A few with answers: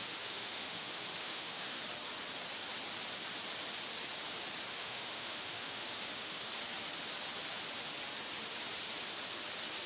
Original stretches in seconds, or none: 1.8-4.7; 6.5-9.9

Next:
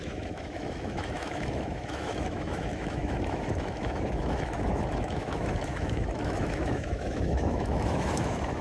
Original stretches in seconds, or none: none

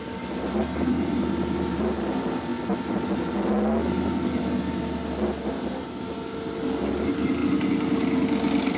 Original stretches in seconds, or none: 0.0-8.8

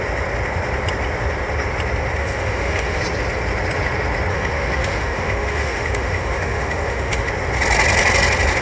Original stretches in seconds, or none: 0.0-2.2; 3.0-4.3; 7.3-8.6

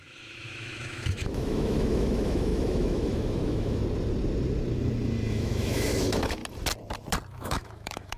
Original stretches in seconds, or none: 3.8-5.3; 6.4-7.3

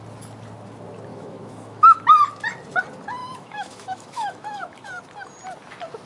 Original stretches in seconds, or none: 0.0-1.1; 2.0-3.2; 5.0-6.1

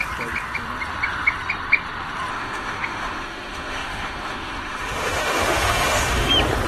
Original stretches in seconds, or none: 0.0-2.3; 6.3-6.7